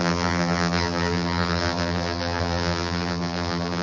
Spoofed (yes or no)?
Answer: yes